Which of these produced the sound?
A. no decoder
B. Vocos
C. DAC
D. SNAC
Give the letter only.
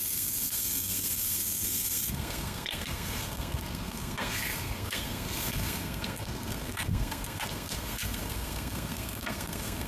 D